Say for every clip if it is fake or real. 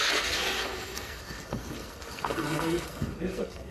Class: fake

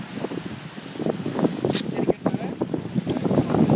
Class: real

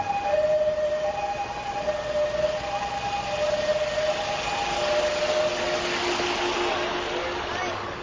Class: real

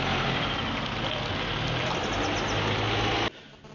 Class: real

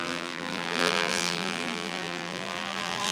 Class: fake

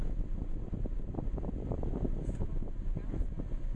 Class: real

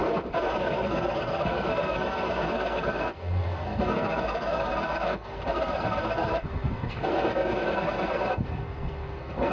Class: fake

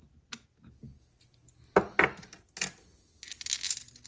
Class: real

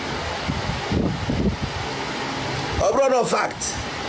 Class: real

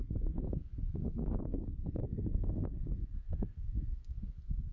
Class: fake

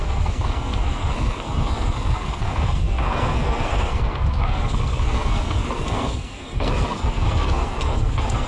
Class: fake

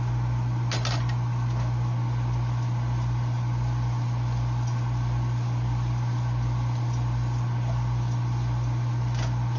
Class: real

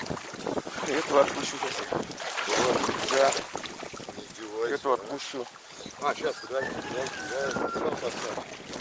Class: real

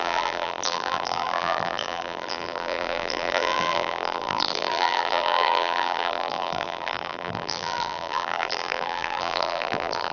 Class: fake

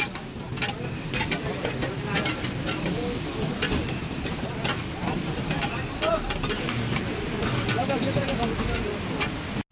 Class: real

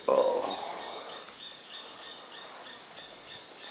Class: fake